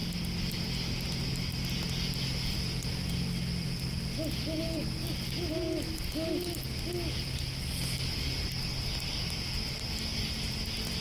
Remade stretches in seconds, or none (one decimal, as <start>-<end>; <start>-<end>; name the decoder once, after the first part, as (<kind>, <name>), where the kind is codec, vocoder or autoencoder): 2.2-4.8 (vocoder, BigVGAN v2); 8.8-11.0